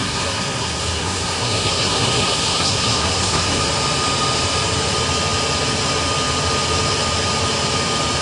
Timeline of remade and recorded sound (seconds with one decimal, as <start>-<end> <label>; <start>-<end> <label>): 0.0-3.6 remade; 3.6-8.2 recorded